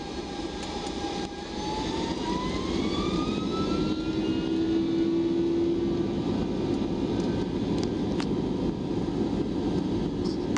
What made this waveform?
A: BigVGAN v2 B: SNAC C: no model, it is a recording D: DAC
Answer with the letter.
C